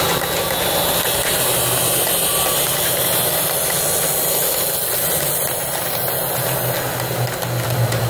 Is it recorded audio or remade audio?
recorded